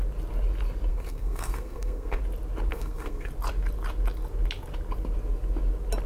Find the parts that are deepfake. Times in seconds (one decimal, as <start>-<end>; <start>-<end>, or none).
0.9-2.2; 2.7-3.3